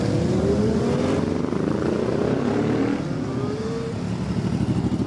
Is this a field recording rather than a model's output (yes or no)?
yes